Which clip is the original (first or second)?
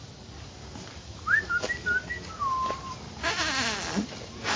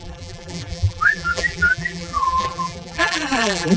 first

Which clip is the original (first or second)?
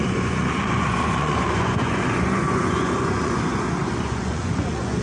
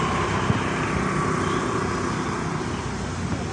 second